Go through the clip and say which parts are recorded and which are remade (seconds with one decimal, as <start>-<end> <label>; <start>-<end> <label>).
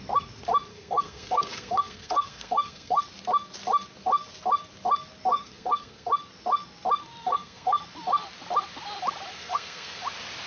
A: 0.0-0.7 recorded; 0.7-3.0 remade; 3.0-5.3 recorded; 5.3-6.1 remade; 6.1-7.2 recorded; 7.2-7.8 remade; 7.8-9.3 recorded; 9.3-10.0 remade; 10.0-10.5 recorded